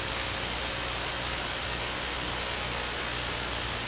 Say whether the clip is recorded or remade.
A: recorded